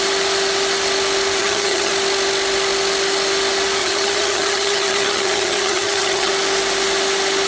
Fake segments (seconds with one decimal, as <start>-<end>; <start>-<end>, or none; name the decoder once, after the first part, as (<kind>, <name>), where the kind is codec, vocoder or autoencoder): 1.4-1.9 (vocoder, HiFi-GAN); 3.8-6.3